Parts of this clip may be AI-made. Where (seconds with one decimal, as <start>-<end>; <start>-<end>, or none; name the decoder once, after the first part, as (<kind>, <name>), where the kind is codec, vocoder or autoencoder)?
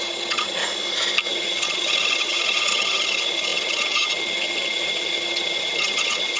0.0-0.6 (vocoder, HiFi-GAN); 1.3-6.4